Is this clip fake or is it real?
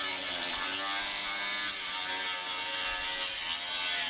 real